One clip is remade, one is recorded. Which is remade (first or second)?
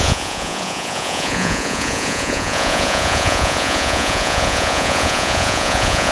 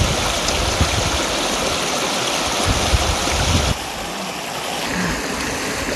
first